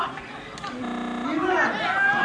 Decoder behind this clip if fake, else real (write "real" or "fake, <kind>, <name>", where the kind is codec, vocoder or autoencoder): real